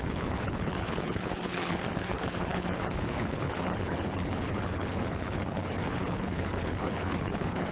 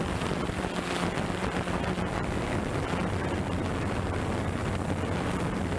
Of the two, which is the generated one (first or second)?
first